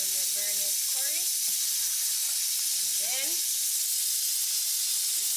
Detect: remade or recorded recorded